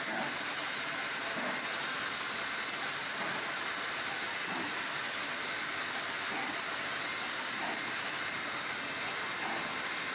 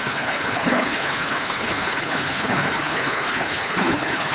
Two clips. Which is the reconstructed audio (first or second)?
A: second